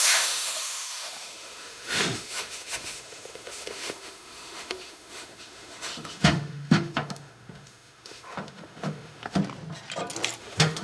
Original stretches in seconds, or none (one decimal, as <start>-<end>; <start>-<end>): 9.4-10.4